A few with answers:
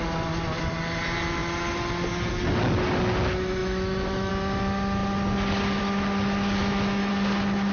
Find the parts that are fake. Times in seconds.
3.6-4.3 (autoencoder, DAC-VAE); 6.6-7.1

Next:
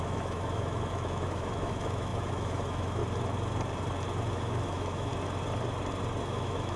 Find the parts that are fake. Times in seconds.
0.0-3.0 (autoencoder, DAC-VAE); 4.3-5.1; 6.2-6.8

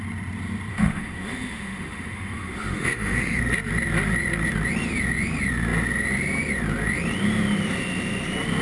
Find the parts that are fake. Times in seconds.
0.7-3.4 (autoencoder, DAC-VAE)

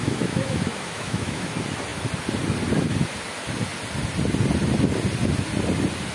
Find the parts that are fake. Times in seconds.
0.0-1.5 (autoencoder, DAC-VAE)

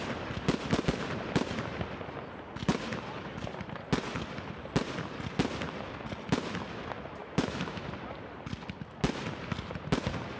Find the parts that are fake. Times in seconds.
7.2-7.8 (autoencoder, DAC-VAE)

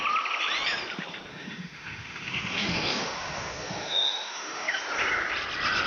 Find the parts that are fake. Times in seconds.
1.3-4.8 (autoencoder, DAC-VAE)

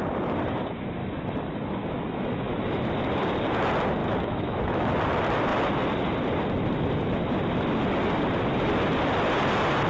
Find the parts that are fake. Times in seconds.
1.0-2.8 (autoencoder, DAC-VAE); 4.0-4.9